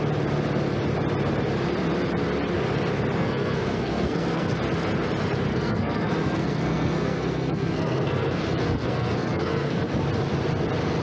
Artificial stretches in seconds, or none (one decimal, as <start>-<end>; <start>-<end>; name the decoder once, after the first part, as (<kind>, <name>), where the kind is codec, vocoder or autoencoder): 3.2-4.6 (codec, SNAC); 5.5-9.8